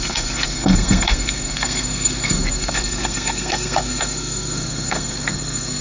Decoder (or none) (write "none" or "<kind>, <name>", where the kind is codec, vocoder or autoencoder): codec, SNAC